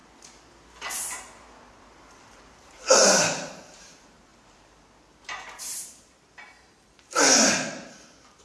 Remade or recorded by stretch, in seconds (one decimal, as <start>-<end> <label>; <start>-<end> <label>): 0.0-1.7 recorded; 1.7-8.4 remade